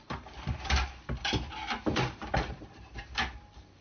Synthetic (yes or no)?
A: yes